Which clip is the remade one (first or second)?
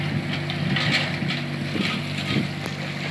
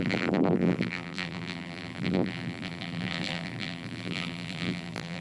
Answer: second